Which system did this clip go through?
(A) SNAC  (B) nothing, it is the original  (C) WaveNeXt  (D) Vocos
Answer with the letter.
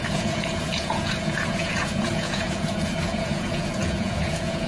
D